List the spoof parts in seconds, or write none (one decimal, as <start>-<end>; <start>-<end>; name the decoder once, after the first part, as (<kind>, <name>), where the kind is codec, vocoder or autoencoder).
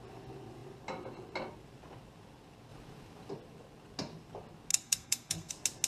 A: 4.7-5.5 (codec, SNAC)